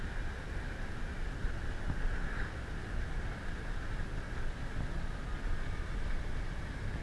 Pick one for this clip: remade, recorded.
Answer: recorded